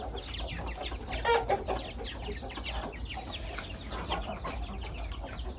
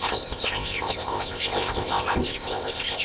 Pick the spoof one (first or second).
second